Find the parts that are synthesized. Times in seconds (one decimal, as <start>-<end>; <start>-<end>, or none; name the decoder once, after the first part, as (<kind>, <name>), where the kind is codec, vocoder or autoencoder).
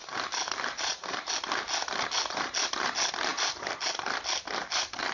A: 0.0-1.3 (vocoder, BigVGAN v2)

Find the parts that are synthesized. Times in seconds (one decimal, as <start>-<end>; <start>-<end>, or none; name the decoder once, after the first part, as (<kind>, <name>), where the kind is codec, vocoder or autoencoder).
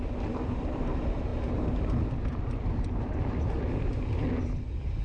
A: none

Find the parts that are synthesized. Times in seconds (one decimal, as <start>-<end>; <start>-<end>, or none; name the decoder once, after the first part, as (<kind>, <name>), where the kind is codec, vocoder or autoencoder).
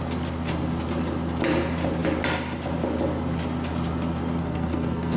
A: 4.4-5.2 (codec, SNAC)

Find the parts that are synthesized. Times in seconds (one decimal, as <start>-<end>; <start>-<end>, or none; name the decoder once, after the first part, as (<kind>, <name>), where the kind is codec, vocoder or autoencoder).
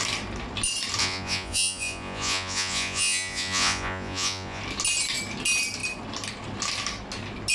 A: 1.0-4.6 (vocoder, Vocos)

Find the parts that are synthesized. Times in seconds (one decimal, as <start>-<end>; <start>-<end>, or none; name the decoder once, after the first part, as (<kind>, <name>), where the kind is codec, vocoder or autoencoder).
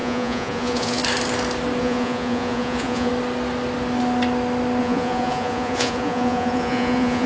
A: 0.0-1.0 (vocoder, Vocos); 1.8-3.1; 4.8-7.3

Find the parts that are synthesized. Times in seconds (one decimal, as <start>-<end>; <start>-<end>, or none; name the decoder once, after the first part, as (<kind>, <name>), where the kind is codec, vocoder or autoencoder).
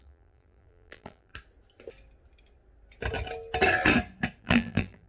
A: 0.0-1.3 (vocoder, BigVGAN v2); 4.4-5.1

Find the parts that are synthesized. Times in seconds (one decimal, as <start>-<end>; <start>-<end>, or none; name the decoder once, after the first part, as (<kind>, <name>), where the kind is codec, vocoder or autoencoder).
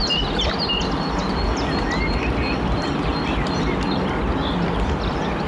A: 0.0-1.2 (vocoder, BigVGAN v2); 4.5-5.5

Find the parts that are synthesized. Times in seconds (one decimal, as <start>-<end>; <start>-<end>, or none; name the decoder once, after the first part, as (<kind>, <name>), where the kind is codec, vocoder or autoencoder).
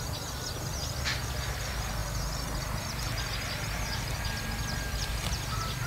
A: none